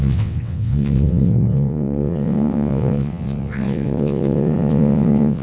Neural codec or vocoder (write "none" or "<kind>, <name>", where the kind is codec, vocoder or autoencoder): vocoder, WaveNeXt